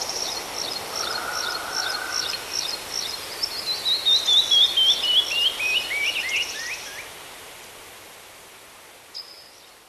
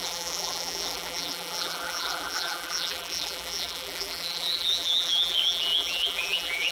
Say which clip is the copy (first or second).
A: second